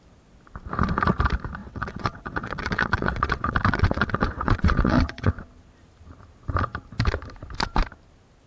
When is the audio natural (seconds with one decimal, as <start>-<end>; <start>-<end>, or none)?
0.0-1.6; 5.3-8.5